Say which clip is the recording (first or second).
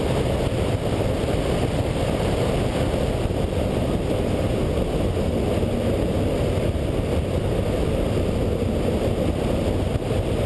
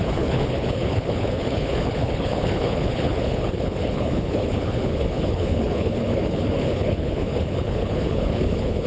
first